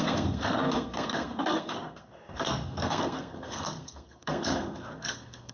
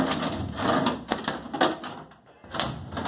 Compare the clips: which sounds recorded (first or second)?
second